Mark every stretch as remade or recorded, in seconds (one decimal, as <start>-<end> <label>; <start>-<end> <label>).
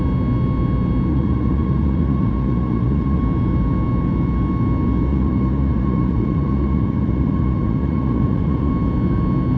0.0-1.1 recorded; 1.1-3.2 remade; 3.2-5.1 recorded; 5.1-8.7 remade; 8.7-9.6 recorded